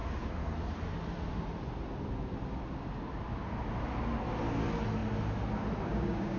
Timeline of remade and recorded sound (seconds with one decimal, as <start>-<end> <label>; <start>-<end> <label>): 0.0-5.9 recorded; 5.9-6.4 remade